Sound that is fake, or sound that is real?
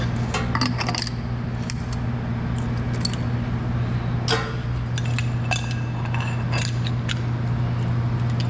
real